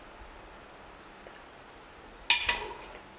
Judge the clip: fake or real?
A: real